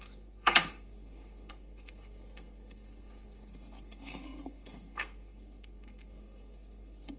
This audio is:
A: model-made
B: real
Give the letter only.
A